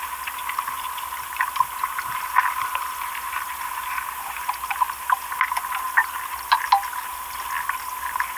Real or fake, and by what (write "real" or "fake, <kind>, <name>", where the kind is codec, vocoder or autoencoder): real